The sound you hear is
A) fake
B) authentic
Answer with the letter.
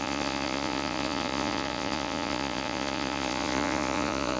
A